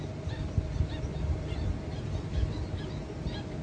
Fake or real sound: real